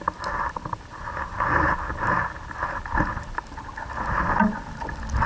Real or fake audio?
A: real